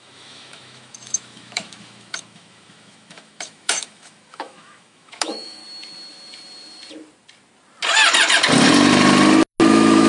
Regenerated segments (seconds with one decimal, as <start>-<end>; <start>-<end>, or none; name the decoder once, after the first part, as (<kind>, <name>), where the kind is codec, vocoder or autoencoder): 0.0-5.6 (autoencoder, DAC-VAE); 9.7-10.1